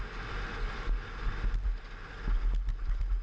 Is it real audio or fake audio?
real